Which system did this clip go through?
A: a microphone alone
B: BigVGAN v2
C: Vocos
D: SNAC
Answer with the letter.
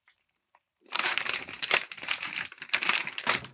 B